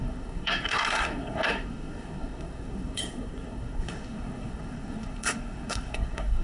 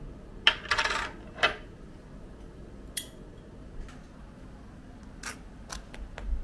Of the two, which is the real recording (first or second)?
second